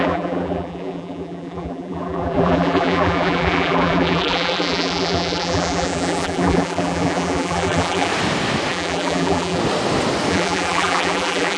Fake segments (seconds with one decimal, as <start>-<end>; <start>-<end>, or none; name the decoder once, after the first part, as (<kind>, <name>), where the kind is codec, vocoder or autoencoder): 0.0-8.1 (vocoder, BigVGAN v2); 8.7-9.6; 10.3-11.6